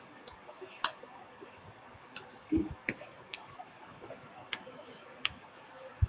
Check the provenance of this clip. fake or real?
fake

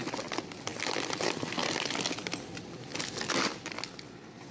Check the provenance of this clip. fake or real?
real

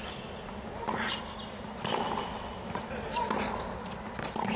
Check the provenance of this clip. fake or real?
real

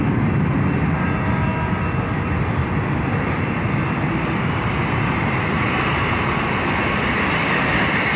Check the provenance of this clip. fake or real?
real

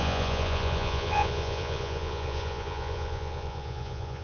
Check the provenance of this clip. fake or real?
fake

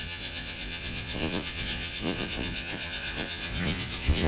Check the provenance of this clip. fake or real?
fake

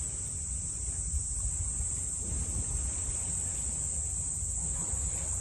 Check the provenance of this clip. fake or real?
real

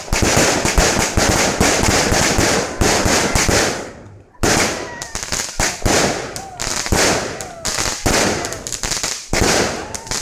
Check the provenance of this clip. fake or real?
real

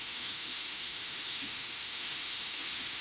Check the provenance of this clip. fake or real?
fake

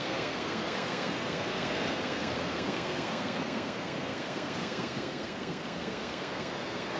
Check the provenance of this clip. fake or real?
fake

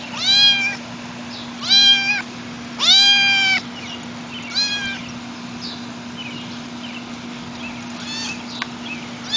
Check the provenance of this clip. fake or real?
real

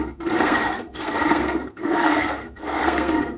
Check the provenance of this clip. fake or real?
fake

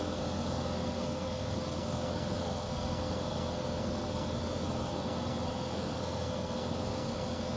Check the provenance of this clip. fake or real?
fake